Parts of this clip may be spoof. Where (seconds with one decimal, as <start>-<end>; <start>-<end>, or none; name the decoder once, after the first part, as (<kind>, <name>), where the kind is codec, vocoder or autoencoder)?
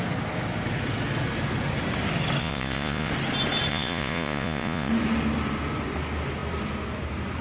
2.4-3.1 (vocoder, Vocos); 3.7-4.9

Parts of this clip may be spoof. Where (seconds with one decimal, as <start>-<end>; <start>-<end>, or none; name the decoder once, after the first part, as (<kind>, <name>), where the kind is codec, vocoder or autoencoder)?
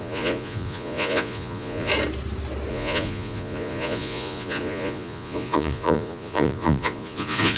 0.0-1.9 (vocoder, Vocos); 2.7-7.6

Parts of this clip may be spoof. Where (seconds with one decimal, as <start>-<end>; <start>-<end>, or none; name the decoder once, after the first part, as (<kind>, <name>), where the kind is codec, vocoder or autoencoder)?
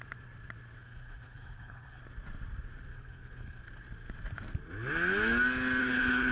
0.8-2.0 (codec, HILCodec); 2.9-3.6; 5.8-6.3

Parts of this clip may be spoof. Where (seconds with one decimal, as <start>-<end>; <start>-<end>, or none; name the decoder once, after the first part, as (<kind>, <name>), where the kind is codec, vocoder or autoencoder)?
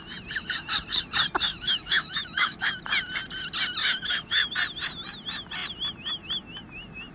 1.5-2.7 (autoencoder, DAC-VAE); 3.8-4.5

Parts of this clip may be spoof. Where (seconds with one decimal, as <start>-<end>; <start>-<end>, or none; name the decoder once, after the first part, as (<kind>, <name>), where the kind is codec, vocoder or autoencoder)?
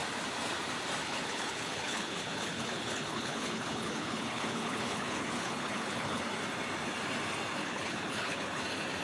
1.0-6.2 (codec, HILCodec); 7.6-8.6